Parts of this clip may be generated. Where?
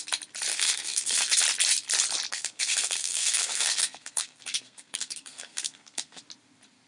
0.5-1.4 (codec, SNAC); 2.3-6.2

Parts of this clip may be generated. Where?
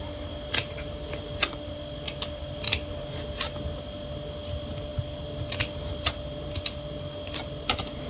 none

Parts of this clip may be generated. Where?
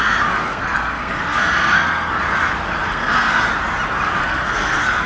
0.5-2.1 (codec, SNAC); 2.8-3.5; 4.2-5.1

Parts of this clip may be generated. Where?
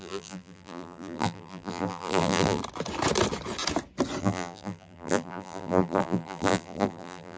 0.0-2.6 (vocoder, BigVGAN v2); 4.2-7.4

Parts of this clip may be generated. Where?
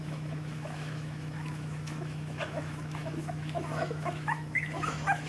0.0-5.3 (autoencoder, DAC-VAE)